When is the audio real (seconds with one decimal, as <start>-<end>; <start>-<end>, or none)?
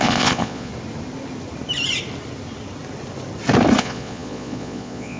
0.7-3.8